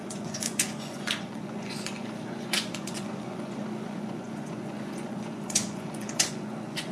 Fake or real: fake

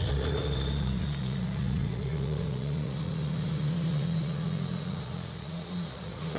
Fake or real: fake